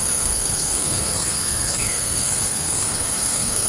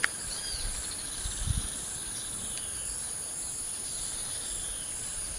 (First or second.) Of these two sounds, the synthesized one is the first